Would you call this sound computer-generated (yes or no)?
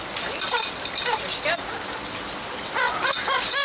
no